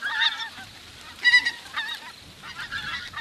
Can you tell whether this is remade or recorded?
recorded